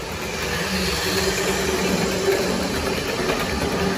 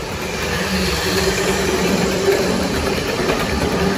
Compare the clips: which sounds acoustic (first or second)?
first